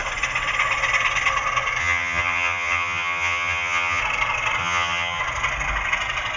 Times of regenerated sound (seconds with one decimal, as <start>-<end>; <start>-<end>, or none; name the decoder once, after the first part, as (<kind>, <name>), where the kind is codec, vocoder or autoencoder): 1.8-4.0 (vocoder, HiFi-GAN); 4.6-5.2